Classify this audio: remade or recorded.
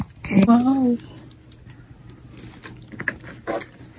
recorded